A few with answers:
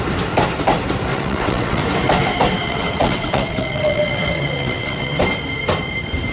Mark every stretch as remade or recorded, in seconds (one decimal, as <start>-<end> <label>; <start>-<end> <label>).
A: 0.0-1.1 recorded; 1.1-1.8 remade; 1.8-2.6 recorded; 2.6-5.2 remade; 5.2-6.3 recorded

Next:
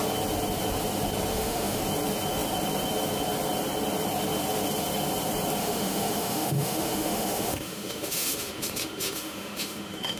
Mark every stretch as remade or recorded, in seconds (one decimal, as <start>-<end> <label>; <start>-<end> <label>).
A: 0.0-1.3 recorded; 1.3-1.8 remade; 1.8-5.6 recorded; 5.6-10.2 remade

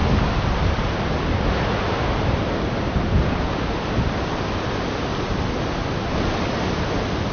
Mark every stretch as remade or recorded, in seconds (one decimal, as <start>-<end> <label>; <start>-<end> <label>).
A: 0.0-7.3 recorded